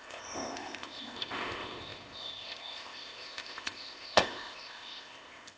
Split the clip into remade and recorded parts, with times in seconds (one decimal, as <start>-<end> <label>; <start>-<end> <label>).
0.0-5.6 remade